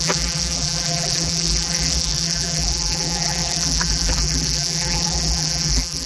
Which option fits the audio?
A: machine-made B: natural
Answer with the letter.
A